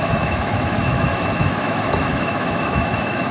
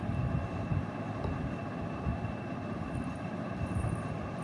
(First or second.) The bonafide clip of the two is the second